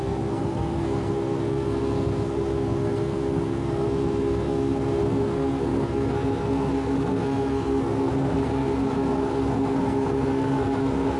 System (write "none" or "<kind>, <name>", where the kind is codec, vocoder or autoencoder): codec, SNAC